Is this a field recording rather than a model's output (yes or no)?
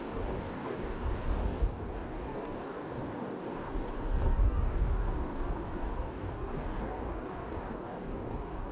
no